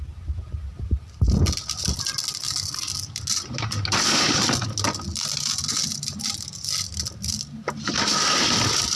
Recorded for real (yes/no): yes